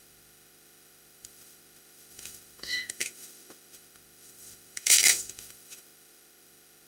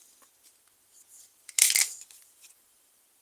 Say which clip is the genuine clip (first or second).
second